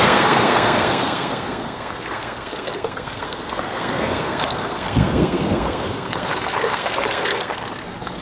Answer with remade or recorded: remade